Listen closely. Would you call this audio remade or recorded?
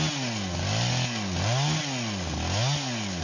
recorded